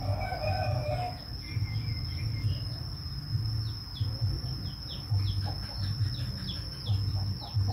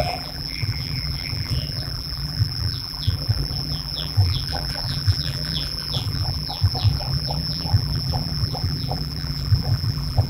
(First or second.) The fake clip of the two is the second